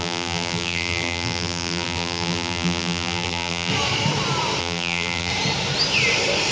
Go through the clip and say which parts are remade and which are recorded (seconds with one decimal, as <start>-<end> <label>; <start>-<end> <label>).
0.0-3.7 remade; 3.7-4.6 recorded; 4.6-5.3 remade; 5.3-6.5 recorded